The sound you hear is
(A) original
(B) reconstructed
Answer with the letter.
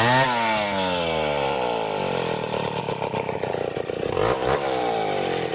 A